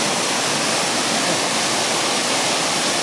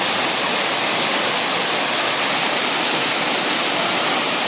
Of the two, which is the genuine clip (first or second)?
first